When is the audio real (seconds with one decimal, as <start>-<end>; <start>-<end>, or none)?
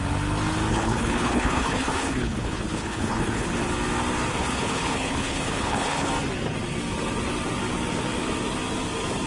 0.0-0.7; 3.6-4.3; 6.1-9.3